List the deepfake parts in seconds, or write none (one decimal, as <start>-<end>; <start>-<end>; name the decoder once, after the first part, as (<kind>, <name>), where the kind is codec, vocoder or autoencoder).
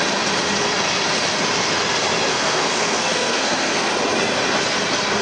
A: 2.3-3.9 (codec, SNAC)